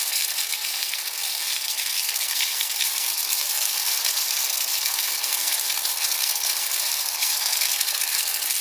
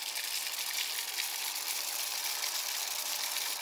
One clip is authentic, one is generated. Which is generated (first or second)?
first